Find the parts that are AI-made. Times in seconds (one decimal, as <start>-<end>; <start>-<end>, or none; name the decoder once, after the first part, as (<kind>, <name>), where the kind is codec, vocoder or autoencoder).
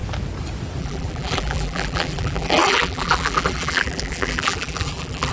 0.8-5.3 (vocoder, BigVGAN v2)